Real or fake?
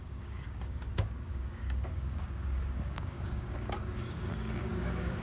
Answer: fake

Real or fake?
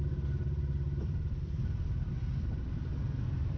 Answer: real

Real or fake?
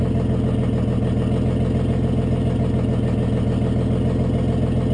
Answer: real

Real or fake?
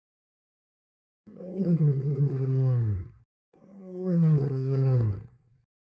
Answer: fake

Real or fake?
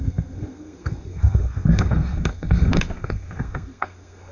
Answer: fake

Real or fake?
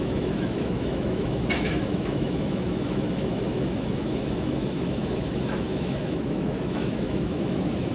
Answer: fake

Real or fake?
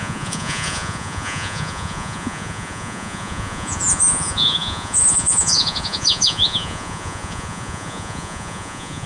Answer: fake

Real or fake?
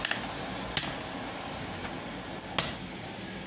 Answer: real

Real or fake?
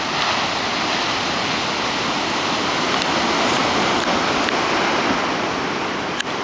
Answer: real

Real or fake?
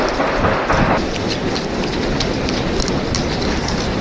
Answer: real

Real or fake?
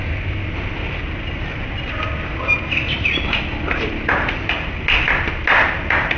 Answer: real